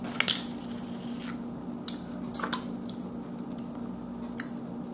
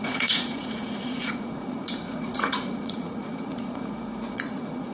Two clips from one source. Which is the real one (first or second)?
first